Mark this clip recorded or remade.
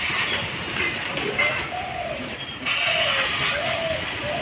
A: recorded